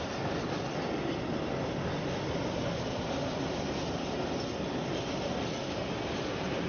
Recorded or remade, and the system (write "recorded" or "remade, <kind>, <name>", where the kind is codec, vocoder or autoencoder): recorded